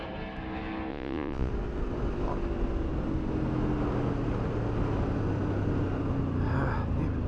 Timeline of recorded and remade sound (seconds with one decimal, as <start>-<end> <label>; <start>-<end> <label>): 0.0-0.9 recorded; 0.9-1.5 remade; 1.5-7.3 recorded